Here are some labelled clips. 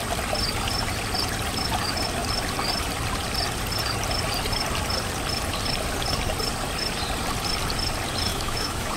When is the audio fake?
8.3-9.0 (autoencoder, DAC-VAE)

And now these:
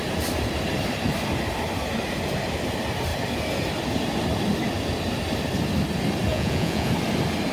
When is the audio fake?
6.3-6.9 (vocoder, Vocos)

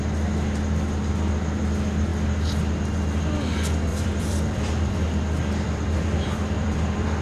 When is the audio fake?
3.9-7.2 (vocoder, BigVGAN v2)

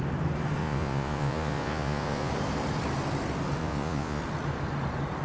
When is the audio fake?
0.6-2.3 (vocoder, Vocos); 3.6-4.2

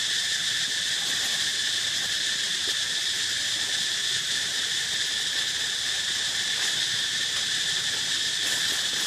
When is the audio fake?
none

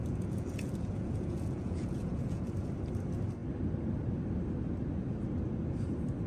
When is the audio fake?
0.0-2.5 (vocoder, Vocos)

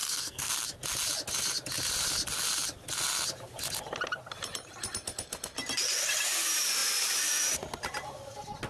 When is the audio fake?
0.0-0.5 (codec, SNAC)